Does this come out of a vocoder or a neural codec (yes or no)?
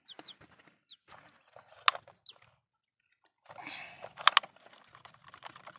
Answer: no